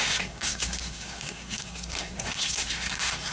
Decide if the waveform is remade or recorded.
remade